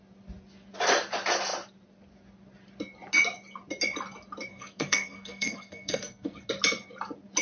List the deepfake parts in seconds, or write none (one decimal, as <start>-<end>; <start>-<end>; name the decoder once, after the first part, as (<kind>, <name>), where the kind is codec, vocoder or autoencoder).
4.5-6.5 (codec, SNAC)